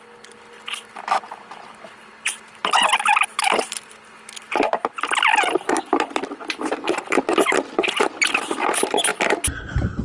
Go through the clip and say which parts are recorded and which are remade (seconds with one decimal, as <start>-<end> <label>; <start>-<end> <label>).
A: 0.0-10.0 recorded